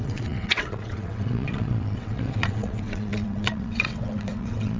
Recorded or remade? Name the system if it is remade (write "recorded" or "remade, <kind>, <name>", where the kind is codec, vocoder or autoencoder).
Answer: remade, vocoder, WaveNeXt